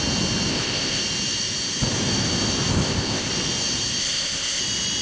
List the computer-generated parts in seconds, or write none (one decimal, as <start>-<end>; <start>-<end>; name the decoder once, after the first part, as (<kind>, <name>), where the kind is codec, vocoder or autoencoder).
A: 0.5-1.0 (codec, ZipCodec); 2.7-3.3; 4.0-4.6